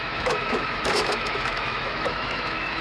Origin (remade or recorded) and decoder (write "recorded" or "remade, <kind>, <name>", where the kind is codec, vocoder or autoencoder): remade, autoencoder, DAC-VAE